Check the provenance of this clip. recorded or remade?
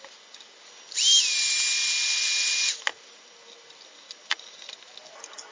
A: recorded